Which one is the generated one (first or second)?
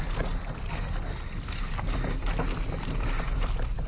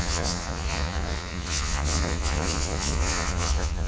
second